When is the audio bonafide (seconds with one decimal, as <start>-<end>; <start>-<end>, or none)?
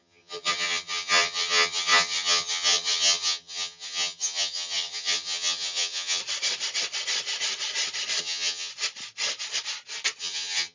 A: 6.2-8.2; 8.7-10.2